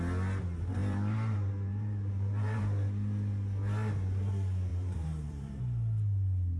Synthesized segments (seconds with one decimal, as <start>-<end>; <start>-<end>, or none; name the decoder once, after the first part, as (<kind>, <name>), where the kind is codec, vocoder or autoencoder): 0.8-2.6 (vocoder, BigVGAN v2); 4.7-5.6

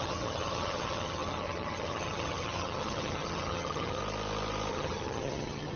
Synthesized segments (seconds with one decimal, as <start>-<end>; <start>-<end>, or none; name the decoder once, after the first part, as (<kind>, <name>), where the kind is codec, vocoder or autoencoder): 0.0-4.0 (vocoder, HiFi-GAN); 4.7-5.8

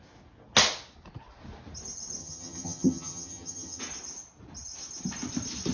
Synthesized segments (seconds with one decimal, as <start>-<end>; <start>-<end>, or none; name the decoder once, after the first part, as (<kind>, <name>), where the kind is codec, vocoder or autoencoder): 2.2-3.8 (vocoder, HiFi-GAN)

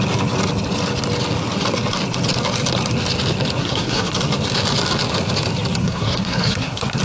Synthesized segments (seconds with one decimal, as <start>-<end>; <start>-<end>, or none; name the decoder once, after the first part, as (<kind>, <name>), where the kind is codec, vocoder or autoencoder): 3.6-4.1 (codec, SNAC); 5.8-7.0